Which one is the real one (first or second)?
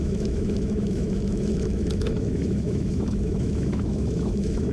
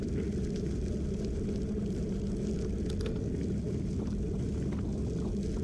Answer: second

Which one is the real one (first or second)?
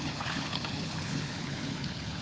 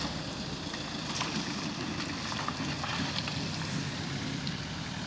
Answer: second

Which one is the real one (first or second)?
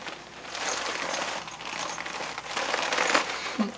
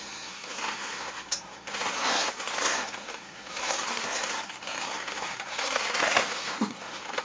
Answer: first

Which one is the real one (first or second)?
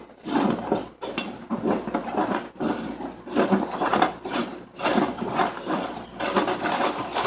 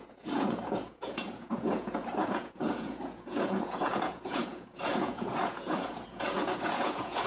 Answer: first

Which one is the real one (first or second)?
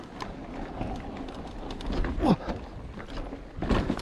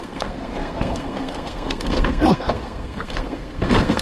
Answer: first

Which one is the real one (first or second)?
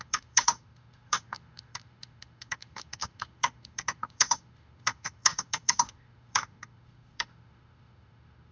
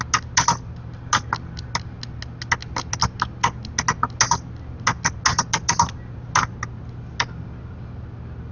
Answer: second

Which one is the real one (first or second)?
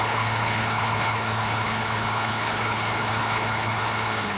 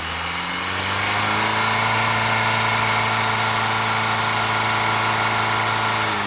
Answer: second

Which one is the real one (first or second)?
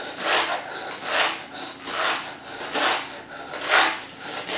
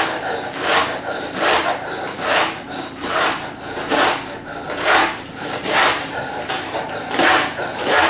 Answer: first